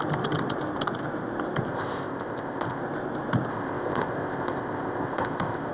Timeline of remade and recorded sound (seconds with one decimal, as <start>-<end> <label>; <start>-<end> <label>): 0.0-1.7 recorded; 1.7-2.8 remade; 2.8-3.5 recorded; 3.5-5.7 remade